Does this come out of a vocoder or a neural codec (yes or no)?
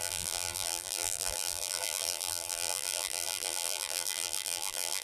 yes